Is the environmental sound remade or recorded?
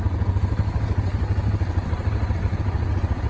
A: recorded